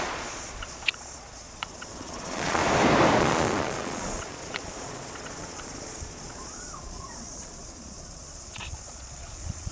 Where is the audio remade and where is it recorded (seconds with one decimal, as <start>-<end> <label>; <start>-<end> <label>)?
0.0-2.6 remade; 2.6-3.2 recorded; 3.2-9.7 remade